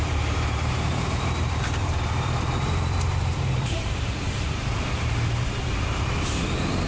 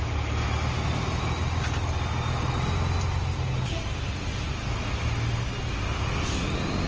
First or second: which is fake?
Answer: first